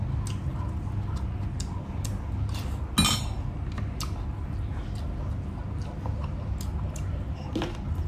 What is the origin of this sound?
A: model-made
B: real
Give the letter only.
B